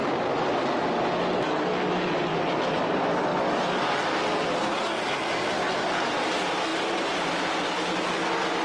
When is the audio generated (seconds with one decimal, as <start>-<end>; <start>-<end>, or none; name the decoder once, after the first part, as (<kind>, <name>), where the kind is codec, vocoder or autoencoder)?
0.0-0.6 (vocoder, BigVGAN v2); 2.3-2.9